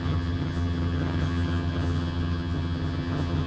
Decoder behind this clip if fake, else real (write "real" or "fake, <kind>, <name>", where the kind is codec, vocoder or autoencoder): fake, vocoder, HiFi-GAN